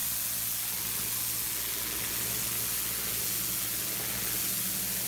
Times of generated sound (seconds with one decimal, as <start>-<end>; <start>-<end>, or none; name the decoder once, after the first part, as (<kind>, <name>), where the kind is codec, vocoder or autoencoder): none